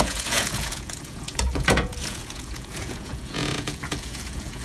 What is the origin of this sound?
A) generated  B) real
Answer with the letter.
A